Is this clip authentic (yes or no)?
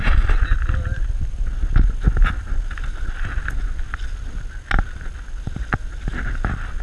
yes